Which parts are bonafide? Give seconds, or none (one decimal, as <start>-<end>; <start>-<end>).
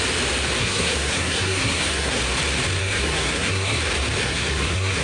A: 0.0-0.6; 2.2-2.8; 3.8-4.2